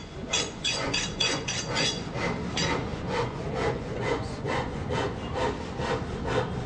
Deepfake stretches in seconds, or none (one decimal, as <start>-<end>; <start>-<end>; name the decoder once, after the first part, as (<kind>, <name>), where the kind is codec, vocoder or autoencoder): 0.0-2.1 (vocoder, Vocos); 2.9-5.2